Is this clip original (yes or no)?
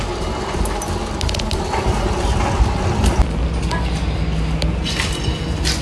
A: yes